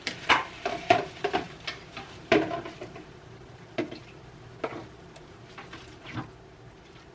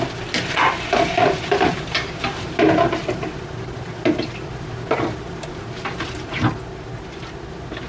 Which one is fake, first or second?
first